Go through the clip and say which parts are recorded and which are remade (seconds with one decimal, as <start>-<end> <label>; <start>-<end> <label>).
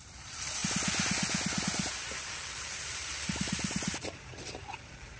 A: 0.0-0.6 remade; 0.6-1.6 recorded; 1.6-5.2 remade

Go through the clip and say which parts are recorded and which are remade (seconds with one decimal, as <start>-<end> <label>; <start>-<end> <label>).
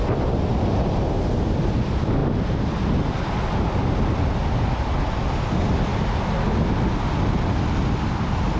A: 0.0-8.6 recorded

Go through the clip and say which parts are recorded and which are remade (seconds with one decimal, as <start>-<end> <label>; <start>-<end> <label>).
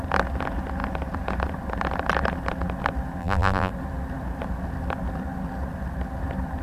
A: 0.0-3.2 recorded; 3.2-3.7 remade; 3.7-6.6 recorded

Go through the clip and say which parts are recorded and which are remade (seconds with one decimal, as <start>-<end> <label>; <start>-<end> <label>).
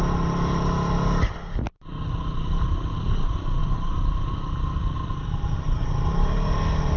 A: 0.0-3.6 recorded; 3.6-5.8 remade; 5.8-7.0 recorded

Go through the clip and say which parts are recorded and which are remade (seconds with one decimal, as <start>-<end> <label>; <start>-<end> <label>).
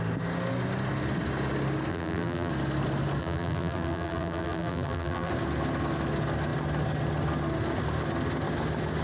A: 0.0-1.9 recorded; 1.9-2.5 remade; 2.5-3.2 recorded; 3.2-5.3 remade; 5.3-9.0 recorded